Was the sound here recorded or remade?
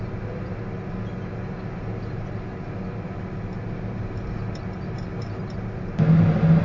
recorded